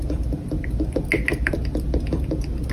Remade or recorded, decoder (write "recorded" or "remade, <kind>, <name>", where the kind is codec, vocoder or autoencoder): recorded